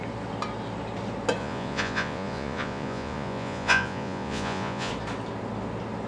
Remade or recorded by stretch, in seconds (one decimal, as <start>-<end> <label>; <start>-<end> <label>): 0.0-1.4 recorded; 1.4-4.9 remade; 4.9-6.1 recorded